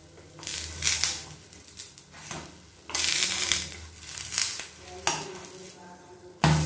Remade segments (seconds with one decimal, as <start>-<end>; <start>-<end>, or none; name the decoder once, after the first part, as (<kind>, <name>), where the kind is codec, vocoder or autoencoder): none